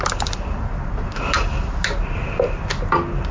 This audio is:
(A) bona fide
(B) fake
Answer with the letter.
A